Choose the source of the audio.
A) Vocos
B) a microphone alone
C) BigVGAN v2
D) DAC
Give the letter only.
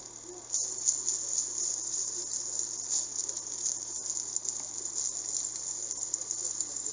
B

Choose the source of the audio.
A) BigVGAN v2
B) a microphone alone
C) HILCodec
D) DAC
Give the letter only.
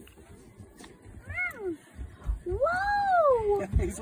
B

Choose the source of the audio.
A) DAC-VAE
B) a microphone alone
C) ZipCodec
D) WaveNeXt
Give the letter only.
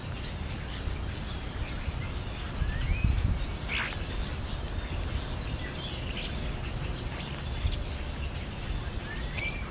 B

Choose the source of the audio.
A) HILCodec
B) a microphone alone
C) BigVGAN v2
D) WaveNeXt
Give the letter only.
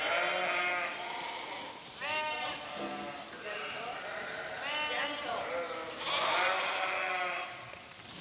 B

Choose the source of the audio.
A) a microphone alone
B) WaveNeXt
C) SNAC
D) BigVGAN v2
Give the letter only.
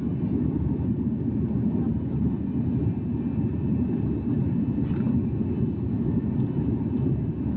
A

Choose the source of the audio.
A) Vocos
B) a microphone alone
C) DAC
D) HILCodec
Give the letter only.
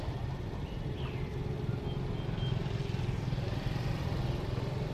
B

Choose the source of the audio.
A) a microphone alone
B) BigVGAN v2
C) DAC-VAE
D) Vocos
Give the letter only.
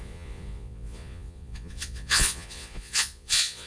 D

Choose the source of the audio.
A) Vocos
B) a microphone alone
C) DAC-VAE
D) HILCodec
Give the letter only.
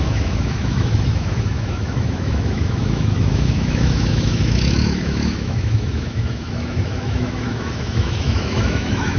C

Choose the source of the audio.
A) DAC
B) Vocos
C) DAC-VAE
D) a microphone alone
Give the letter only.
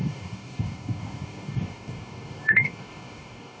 A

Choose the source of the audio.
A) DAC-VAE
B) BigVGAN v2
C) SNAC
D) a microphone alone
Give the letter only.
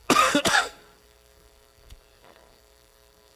C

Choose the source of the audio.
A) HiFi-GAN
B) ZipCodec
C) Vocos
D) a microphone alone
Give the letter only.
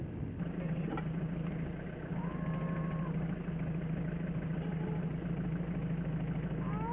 D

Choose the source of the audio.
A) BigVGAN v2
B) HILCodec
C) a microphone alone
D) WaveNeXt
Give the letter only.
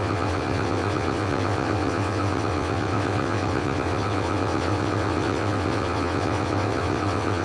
D